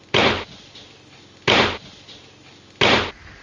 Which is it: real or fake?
real